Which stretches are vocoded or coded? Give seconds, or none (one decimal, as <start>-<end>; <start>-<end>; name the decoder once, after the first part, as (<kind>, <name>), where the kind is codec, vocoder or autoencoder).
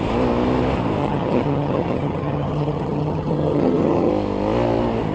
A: 1.0-4.1 (vocoder, HiFi-GAN)